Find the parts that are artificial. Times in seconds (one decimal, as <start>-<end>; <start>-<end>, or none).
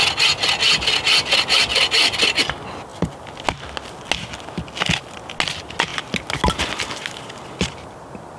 none